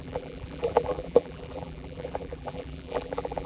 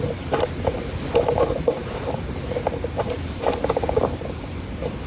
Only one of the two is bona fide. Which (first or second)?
second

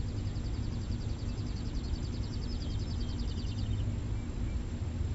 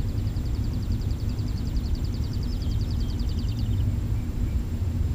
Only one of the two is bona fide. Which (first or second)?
first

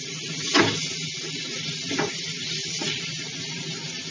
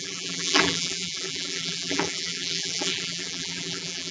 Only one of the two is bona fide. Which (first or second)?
first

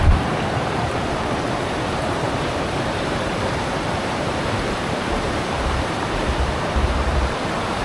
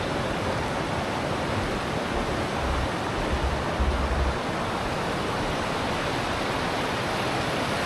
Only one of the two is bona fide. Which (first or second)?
second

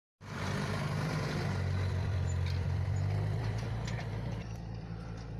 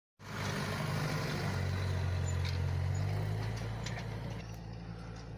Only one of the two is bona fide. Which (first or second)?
second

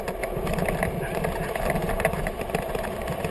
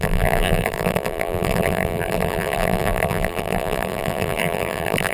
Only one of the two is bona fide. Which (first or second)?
first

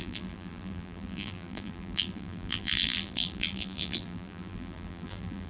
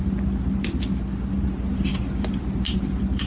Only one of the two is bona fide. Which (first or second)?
second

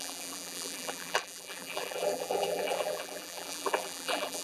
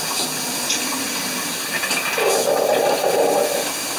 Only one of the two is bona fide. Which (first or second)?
second